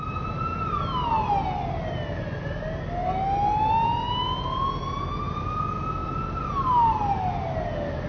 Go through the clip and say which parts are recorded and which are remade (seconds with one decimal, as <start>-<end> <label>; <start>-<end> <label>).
0.0-8.1 recorded